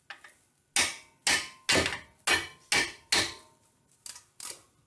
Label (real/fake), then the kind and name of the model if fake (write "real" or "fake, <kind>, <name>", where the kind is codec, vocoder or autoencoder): real